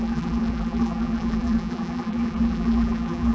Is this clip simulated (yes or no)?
yes